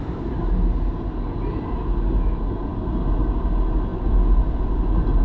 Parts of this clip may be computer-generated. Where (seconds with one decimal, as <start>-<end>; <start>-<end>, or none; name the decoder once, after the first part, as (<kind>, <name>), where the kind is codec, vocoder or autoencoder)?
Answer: none